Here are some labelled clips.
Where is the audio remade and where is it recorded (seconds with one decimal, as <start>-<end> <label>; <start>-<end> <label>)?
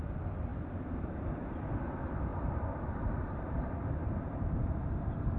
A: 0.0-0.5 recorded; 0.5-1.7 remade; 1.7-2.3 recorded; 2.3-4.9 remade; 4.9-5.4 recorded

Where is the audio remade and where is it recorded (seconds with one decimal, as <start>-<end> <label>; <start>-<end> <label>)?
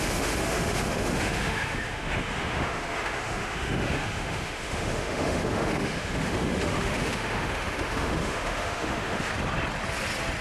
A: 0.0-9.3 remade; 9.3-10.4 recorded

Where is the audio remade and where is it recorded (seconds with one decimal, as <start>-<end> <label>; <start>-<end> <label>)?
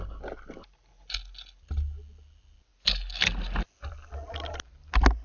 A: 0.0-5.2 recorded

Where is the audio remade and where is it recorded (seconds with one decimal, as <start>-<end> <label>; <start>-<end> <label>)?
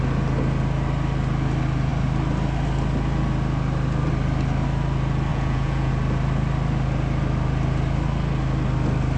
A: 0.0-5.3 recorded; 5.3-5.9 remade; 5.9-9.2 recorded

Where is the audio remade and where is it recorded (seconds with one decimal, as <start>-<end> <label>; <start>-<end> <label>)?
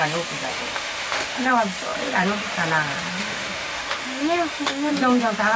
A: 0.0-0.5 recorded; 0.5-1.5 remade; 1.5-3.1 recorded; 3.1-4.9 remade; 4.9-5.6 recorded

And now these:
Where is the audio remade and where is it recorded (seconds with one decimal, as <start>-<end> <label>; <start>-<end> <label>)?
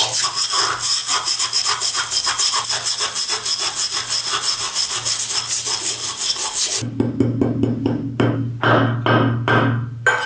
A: 0.0-10.3 recorded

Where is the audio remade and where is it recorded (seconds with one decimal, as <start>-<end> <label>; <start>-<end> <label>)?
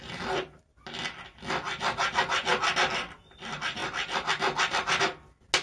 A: 0.0-5.6 recorded